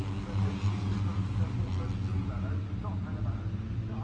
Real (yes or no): yes